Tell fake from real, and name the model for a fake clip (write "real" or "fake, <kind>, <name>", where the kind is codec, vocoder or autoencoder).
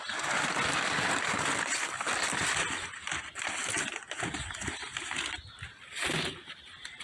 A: real